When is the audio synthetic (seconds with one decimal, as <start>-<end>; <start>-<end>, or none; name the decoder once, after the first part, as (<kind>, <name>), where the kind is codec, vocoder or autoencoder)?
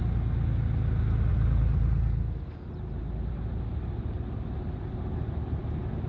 none